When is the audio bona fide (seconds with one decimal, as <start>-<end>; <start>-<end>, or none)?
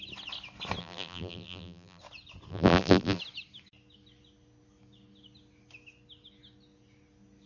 0.0-0.8; 2.0-2.5; 3.2-7.5